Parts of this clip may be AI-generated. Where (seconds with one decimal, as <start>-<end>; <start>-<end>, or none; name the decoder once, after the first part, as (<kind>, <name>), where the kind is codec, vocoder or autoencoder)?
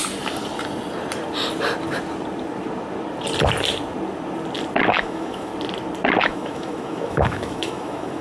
4.9-5.5 (autoencoder, DAC-VAE); 6.2-8.2